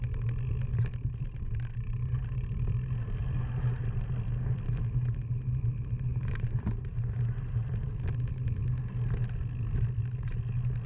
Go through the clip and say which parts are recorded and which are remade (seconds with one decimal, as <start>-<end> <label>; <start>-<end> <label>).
0.0-3.2 recorded; 3.2-3.9 remade; 3.9-6.1 recorded; 6.1-7.9 remade; 7.9-10.9 recorded